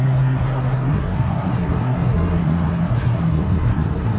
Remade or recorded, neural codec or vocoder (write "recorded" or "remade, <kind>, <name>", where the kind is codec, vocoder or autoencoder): remade, codec, SNAC